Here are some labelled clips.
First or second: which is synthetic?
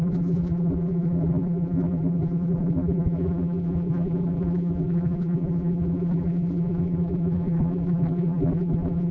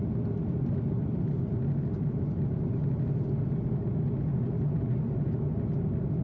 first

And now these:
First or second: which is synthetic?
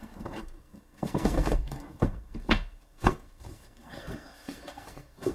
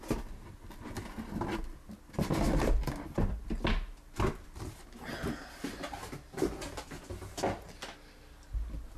first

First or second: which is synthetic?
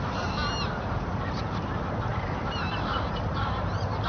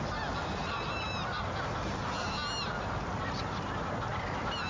first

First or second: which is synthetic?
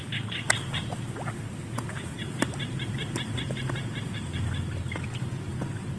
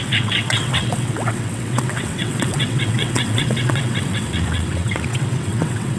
second